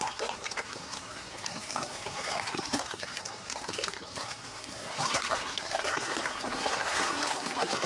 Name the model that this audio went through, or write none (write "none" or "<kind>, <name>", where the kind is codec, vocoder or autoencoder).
codec, SNAC